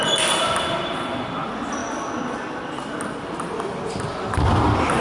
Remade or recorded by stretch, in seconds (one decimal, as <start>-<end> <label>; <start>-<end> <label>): 0.0-5.0 recorded